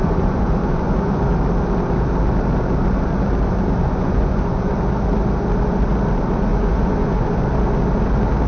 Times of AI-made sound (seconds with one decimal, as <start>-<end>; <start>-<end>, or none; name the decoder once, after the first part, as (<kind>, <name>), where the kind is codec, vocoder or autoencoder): 0.0-1.2 (vocoder, Vocos); 3.8-4.7; 6.5-7.4